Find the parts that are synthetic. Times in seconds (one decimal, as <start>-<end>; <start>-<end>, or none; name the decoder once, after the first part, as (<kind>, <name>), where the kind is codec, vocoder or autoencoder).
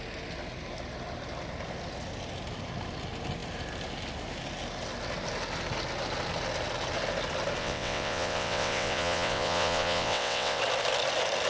7.6-10.6 (vocoder, WaveNeXt)